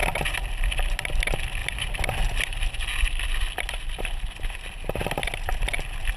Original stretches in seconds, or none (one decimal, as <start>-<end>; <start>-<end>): 0.0-6.2